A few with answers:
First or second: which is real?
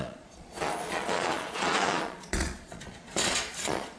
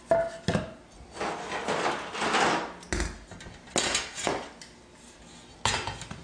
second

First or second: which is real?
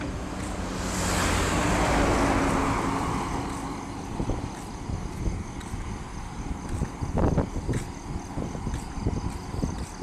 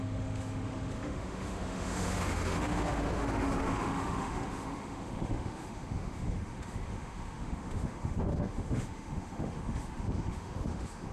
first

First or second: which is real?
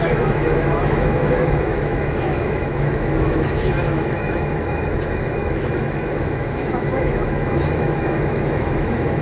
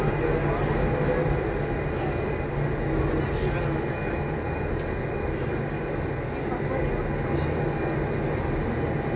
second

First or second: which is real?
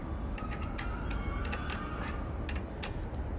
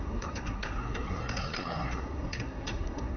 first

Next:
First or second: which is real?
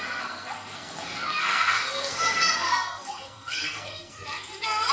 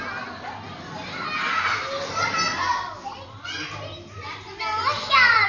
second